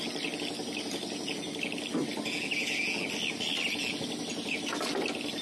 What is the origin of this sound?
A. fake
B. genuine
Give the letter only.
B